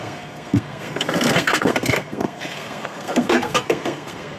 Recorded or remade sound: remade